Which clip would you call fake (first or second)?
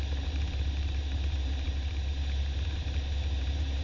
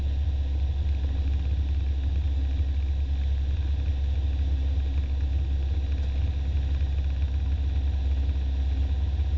first